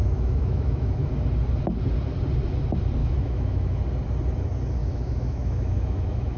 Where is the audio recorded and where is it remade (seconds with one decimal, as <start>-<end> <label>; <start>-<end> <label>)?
0.0-1.1 remade; 1.1-3.0 recorded; 3.0-3.8 remade; 3.8-4.8 recorded; 4.8-6.4 remade